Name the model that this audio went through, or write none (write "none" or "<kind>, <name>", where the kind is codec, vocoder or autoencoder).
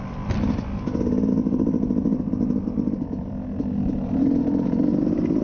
none